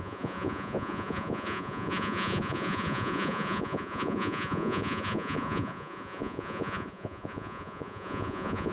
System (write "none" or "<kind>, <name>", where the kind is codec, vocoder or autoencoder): vocoder, Vocos